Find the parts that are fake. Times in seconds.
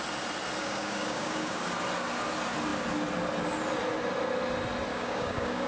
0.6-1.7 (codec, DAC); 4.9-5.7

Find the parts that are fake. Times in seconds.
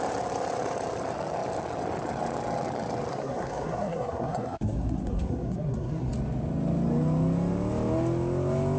3.1-6.1 (codec, SNAC)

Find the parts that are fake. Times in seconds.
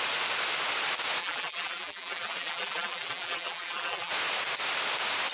1.2-4.1 (vocoder, BigVGAN v2)